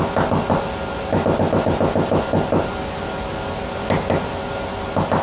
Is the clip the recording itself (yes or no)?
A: yes